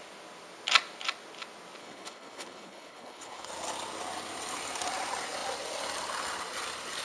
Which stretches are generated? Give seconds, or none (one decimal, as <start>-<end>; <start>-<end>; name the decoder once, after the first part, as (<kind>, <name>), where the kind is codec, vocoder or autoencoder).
1.8-3.5 (codec, HILCodec)